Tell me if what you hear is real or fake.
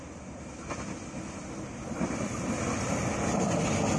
real